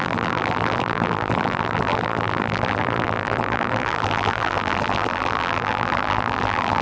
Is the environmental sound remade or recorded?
remade